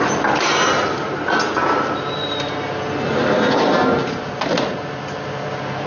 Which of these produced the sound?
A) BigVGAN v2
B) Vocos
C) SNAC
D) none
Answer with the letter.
D